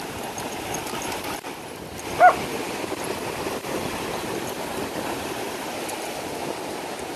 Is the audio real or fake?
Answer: real